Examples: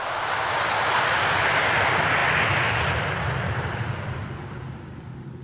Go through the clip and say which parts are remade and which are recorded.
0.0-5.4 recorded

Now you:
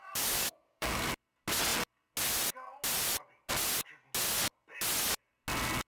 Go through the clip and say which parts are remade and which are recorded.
0.0-1.1 remade; 1.1-5.9 recorded

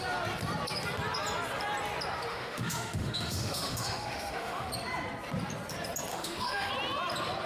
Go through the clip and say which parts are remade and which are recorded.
0.0-2.3 recorded; 2.3-4.7 remade; 4.7-6.1 recorded; 6.1-6.7 remade; 6.7-7.5 recorded

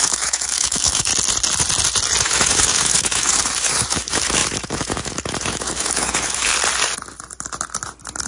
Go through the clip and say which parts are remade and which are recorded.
0.0-1.1 remade; 1.1-2.2 recorded; 2.2-6.5 remade; 6.5-8.3 recorded

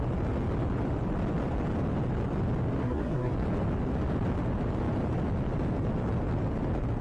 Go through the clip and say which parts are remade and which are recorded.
0.0-2.8 recorded; 2.8-3.3 remade; 3.3-7.0 recorded